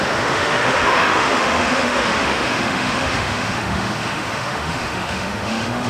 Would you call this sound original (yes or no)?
no